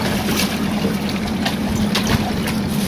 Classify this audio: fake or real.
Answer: real